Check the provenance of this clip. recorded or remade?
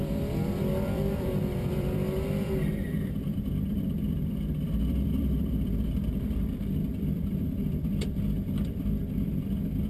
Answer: remade